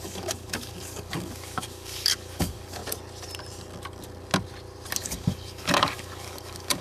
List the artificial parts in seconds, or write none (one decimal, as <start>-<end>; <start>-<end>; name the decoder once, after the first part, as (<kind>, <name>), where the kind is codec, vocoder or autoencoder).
0.0-2.8 (codec, DAC); 5.0-6.8